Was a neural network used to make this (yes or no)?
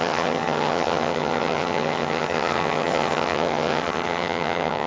yes